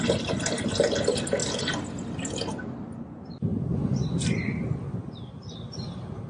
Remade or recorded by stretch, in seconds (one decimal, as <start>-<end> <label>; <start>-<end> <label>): 0.0-6.3 recorded